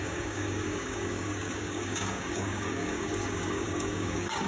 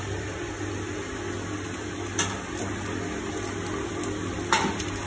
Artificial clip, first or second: first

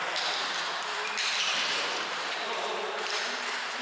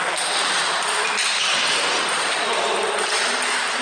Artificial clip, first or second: second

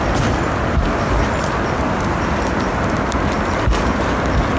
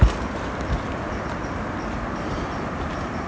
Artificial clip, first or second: second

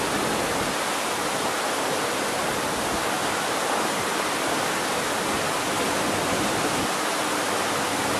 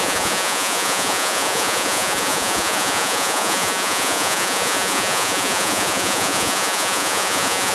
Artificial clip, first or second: second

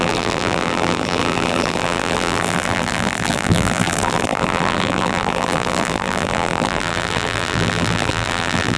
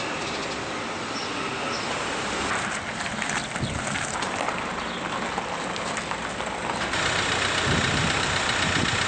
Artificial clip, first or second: first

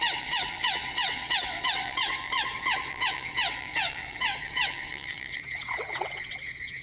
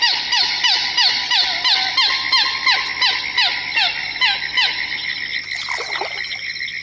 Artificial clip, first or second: first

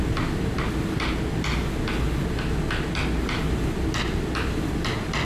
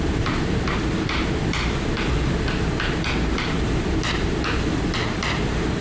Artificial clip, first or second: second